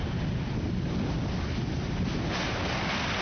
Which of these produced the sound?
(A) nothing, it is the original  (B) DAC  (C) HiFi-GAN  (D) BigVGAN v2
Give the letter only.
A